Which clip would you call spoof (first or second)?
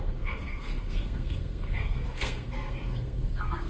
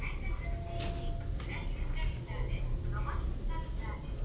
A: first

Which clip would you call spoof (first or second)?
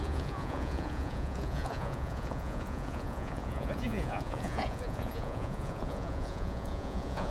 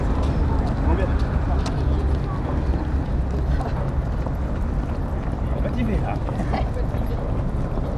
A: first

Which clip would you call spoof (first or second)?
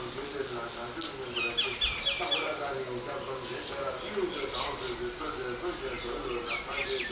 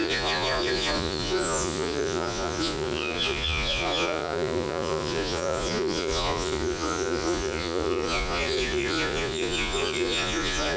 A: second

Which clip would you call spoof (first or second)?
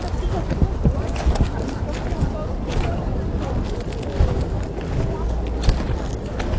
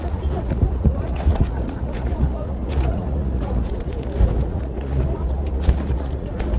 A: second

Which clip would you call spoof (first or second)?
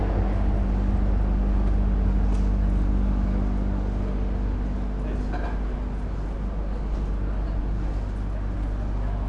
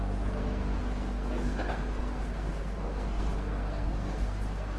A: second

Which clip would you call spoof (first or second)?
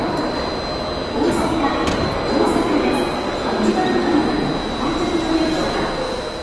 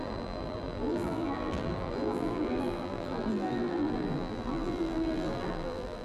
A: second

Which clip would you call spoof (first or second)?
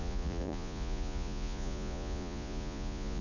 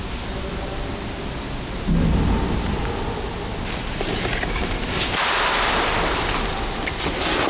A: first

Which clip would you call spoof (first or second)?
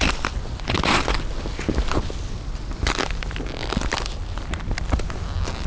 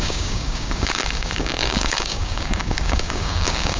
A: second